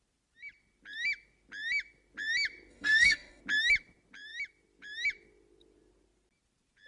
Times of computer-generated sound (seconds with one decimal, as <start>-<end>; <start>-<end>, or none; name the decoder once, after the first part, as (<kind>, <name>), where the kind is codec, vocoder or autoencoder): 2.7-3.4 (codec, SNAC)